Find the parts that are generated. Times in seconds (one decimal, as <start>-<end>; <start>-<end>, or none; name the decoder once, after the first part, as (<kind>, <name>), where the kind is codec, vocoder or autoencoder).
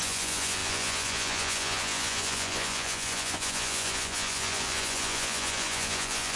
0.0-6.4 (vocoder, Vocos)